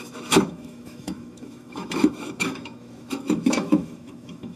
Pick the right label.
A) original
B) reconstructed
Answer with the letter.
B